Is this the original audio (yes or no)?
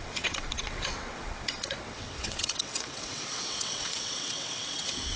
no